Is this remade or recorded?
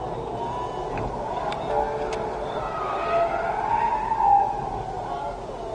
recorded